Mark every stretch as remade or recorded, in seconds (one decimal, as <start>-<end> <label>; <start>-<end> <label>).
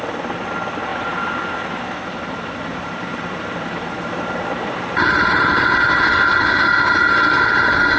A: 0.0-0.9 recorded; 0.9-5.5 remade; 5.5-8.0 recorded